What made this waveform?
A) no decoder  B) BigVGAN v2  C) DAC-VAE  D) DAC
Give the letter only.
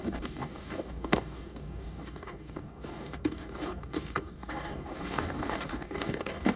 D